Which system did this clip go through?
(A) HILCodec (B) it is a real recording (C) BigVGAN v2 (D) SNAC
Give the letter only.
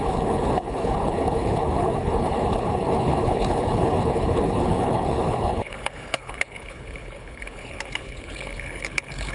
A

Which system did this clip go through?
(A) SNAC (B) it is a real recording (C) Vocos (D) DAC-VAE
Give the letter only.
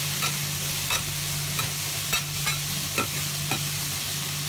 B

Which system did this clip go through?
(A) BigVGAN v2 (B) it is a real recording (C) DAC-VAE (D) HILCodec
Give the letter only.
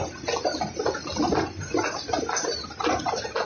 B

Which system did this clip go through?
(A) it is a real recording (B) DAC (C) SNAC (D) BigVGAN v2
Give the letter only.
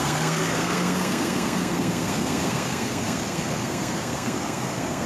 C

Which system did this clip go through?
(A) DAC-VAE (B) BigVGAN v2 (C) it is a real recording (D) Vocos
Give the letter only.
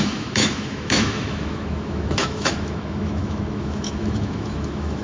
A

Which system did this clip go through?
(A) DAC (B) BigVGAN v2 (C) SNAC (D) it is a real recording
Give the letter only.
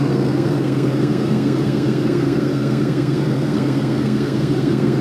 C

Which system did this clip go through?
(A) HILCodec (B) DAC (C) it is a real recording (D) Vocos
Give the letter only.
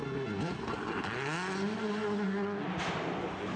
C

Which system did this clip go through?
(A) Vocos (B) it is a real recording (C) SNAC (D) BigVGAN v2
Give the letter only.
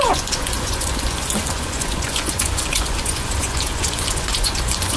A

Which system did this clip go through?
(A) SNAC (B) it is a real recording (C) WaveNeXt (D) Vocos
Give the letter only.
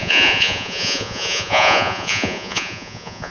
D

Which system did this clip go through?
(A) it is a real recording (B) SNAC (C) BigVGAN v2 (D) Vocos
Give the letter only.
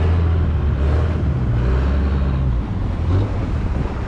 A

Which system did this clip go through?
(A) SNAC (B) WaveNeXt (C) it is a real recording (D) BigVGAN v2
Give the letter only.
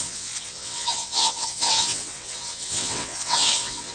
B